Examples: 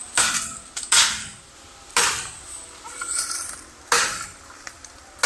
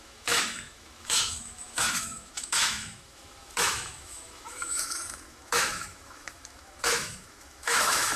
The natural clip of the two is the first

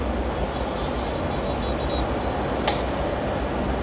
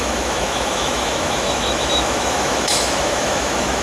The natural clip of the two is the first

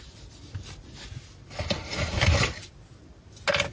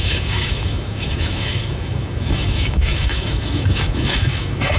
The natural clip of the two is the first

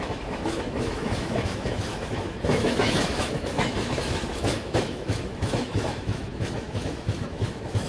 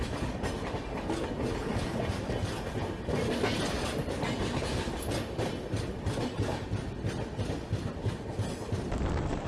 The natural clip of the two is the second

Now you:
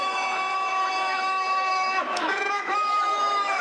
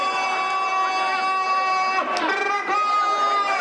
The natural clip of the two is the second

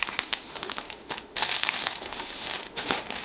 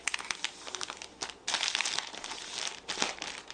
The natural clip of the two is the second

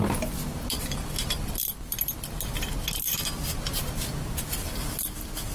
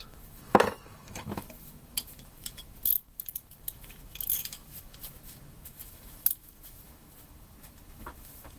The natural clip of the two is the first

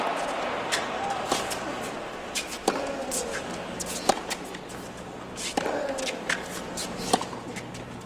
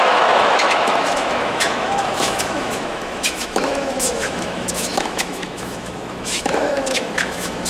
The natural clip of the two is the first